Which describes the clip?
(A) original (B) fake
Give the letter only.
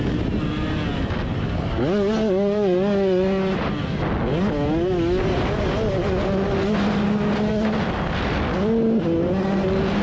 A